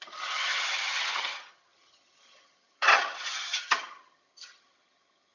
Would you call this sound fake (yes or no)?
yes